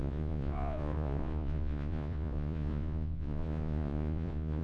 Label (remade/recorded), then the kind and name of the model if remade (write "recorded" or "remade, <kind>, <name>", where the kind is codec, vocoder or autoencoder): remade, vocoder, Vocos